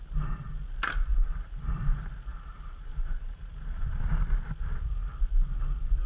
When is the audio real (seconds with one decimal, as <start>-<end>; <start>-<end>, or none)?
0.0-1.1; 1.7-2.3; 4.0-6.1